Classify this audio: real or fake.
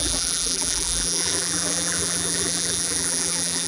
fake